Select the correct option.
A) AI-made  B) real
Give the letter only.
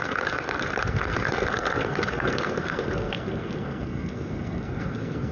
A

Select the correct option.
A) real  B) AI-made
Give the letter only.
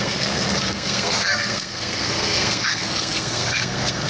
B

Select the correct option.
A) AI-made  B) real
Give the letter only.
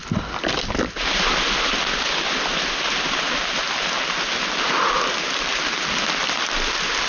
B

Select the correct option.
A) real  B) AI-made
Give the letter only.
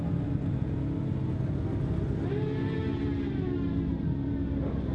A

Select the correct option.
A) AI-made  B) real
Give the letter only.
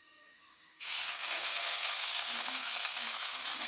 A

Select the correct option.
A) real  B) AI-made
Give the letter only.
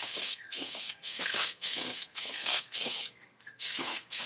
B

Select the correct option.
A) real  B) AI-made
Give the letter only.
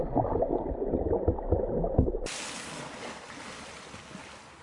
A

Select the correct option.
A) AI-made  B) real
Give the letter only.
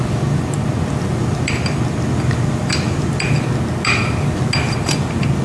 B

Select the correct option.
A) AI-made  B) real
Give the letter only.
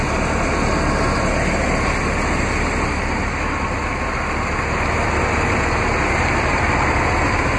B